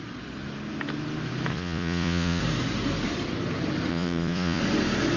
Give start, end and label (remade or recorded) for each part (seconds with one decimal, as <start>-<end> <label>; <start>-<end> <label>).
0.0-1.5 recorded; 1.5-2.4 remade; 2.4-3.9 recorded; 3.9-4.6 remade; 4.6-5.2 recorded